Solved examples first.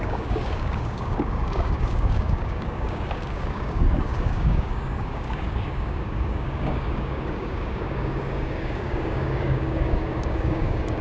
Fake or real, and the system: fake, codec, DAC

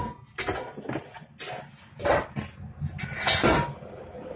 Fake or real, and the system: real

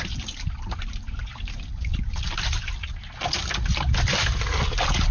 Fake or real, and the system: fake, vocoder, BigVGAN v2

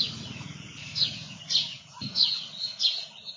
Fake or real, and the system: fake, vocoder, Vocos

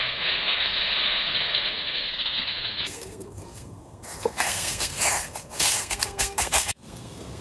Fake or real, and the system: fake, codec, SNAC